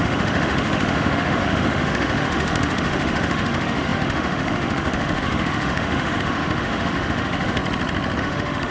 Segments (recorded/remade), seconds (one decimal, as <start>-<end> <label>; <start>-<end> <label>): 0.0-7.6 remade; 7.6-8.2 recorded; 8.2-8.7 remade